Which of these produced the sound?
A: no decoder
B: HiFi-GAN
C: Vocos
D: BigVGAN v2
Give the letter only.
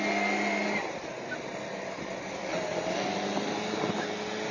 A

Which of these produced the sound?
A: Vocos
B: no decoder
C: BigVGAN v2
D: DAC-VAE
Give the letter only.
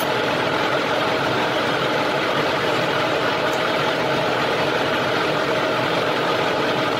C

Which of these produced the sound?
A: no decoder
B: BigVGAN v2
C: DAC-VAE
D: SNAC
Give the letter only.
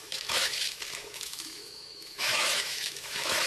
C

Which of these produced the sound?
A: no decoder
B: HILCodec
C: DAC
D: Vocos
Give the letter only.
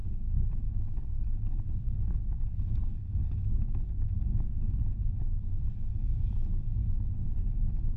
C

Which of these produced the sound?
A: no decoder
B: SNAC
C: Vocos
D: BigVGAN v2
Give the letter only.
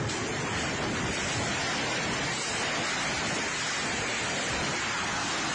A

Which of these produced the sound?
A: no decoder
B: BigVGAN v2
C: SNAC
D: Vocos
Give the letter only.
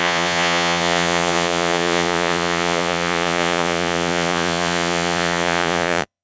D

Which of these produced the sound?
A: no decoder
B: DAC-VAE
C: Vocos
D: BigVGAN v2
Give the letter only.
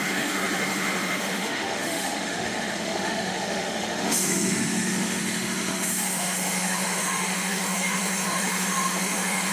B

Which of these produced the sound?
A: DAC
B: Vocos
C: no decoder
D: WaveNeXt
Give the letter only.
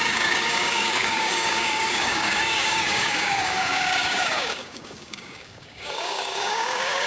A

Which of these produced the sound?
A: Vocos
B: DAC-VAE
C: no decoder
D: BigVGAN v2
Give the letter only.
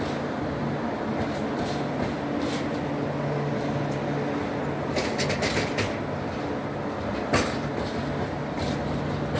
C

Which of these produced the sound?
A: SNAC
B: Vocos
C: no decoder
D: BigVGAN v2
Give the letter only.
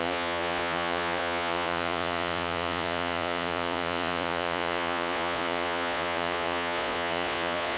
B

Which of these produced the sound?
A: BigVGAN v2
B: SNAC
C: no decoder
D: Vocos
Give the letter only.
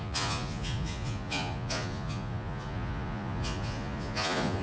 D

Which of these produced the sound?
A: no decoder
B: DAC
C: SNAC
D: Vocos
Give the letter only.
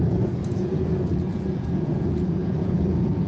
D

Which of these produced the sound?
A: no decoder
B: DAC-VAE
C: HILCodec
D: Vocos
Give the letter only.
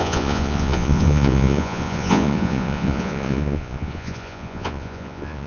D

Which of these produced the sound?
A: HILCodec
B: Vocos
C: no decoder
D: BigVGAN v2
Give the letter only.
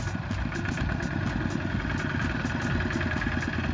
C